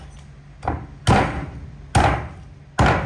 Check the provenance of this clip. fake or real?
real